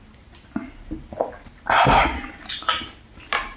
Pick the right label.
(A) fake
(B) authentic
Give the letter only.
B